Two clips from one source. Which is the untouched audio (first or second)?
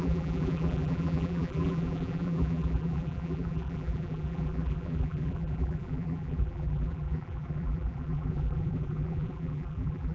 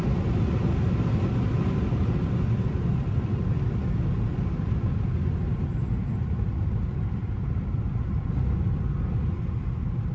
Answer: second